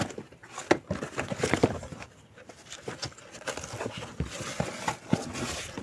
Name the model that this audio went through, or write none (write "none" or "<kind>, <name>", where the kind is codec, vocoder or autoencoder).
none